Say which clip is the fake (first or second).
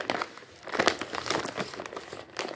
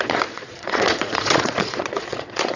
second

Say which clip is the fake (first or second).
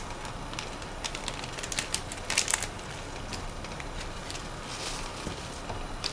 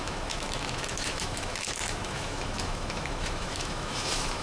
second